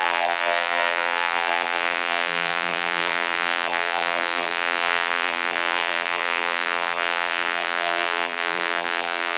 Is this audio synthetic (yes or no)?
yes